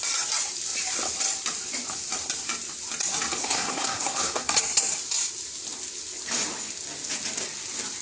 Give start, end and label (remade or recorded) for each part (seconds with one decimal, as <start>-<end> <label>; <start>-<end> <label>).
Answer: 0.0-3.4 recorded; 3.4-4.5 remade; 4.5-8.0 recorded